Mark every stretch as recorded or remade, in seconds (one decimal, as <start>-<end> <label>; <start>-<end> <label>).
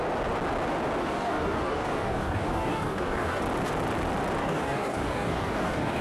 0.0-1.0 recorded; 1.0-3.4 remade; 3.4-4.4 recorded; 4.4-6.0 remade